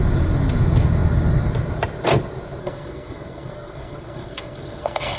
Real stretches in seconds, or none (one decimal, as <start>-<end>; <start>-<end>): 0.0-2.6